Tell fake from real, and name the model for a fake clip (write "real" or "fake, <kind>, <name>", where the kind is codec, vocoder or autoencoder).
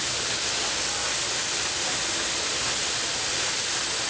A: real